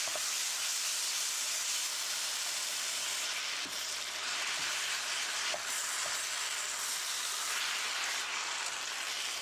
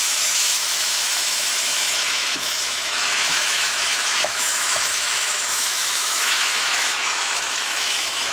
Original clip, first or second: first